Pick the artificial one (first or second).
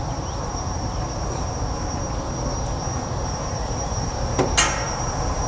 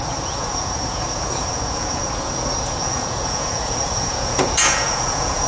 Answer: second